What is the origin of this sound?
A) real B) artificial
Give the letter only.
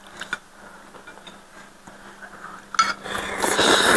A